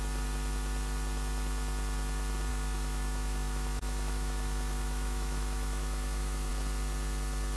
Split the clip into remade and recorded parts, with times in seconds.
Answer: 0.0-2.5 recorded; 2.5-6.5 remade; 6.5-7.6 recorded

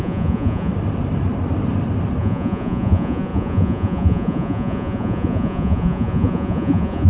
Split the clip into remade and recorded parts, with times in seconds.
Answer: 0.0-0.7 remade; 0.7-2.2 recorded; 2.2-7.1 remade

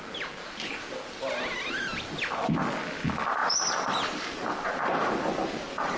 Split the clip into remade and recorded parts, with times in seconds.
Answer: 0.0-3.4 recorded; 3.4-6.0 remade

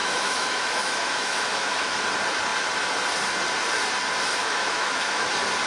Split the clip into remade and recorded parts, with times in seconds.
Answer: 0.0-2.0 remade; 2.0-4.4 recorded; 4.4-5.3 remade; 5.3-5.7 recorded

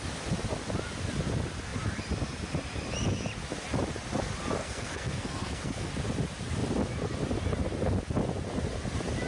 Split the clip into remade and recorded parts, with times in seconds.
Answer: 0.0-4.6 recorded; 4.6-5.9 remade; 5.9-9.3 recorded

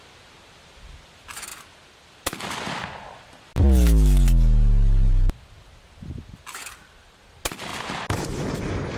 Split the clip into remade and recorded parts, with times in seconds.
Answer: 0.0-9.0 recorded